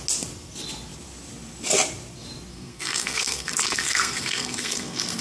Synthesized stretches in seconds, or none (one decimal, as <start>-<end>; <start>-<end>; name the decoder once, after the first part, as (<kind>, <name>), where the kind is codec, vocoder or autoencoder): 2.5-5.2 (codec, SNAC)